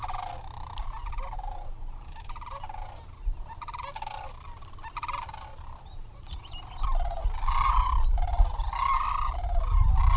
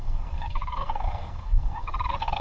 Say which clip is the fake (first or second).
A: second